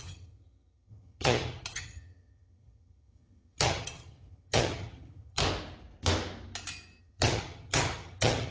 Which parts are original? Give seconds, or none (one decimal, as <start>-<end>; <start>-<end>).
5.4-7.0